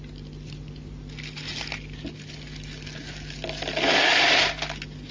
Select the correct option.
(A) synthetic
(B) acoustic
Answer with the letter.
B